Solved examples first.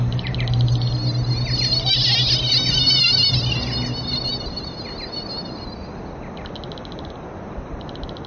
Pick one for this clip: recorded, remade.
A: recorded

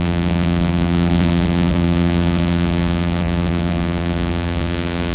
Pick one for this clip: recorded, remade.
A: remade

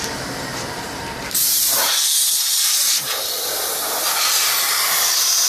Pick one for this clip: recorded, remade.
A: remade